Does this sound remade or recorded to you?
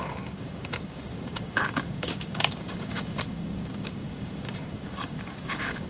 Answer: remade